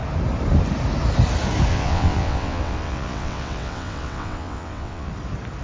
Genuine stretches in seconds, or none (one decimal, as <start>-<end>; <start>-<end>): 0.0-1.7; 5.1-5.6